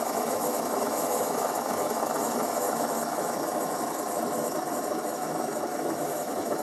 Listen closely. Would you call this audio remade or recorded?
remade